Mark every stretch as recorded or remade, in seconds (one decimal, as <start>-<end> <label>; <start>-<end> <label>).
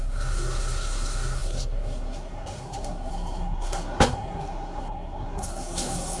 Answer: 0.0-6.2 remade